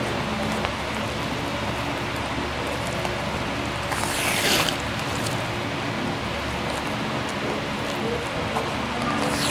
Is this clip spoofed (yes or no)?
no